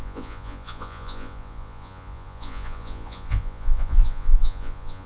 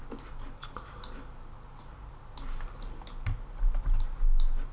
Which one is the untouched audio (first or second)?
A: second